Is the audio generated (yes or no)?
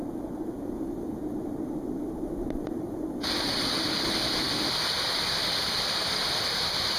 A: no